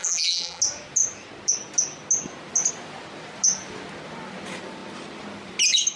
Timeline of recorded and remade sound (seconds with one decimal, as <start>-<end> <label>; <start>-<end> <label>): 0.0-0.6 remade; 0.6-6.0 recorded